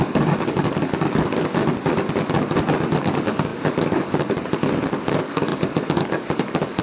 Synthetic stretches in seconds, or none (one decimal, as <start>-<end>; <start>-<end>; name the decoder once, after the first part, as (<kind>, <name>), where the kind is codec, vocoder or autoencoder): 0.0-1.6 (codec, DAC); 3.0-6.8